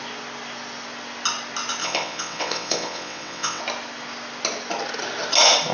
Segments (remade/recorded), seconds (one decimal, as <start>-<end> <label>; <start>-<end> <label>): 0.0-1.8 recorded; 1.8-3.6 remade; 3.6-5.7 recorded